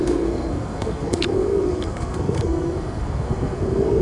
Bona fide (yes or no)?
no